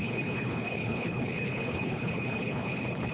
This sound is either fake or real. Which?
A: fake